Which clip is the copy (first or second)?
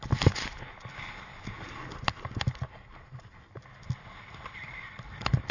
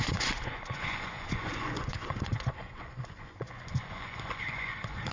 second